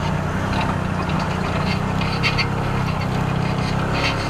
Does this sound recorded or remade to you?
recorded